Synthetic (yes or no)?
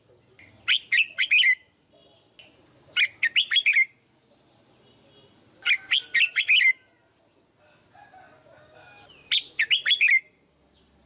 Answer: no